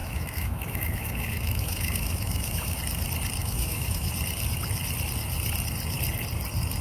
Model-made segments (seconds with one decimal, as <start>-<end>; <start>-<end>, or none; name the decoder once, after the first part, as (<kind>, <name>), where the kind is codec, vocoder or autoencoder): 0.0-2.8 (autoencoder, DAC-VAE); 3.4-4.1